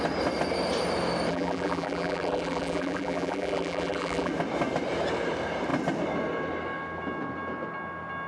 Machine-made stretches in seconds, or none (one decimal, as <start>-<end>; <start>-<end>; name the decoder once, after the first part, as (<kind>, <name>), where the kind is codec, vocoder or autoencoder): 1.3-4.3 (vocoder, BigVGAN v2)